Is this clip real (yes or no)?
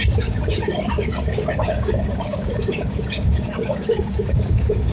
no